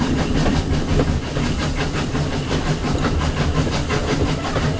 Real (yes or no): yes